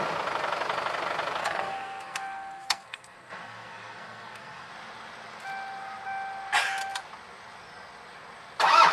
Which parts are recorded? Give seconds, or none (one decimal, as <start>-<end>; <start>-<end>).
0.0-1.4; 4.7-8.9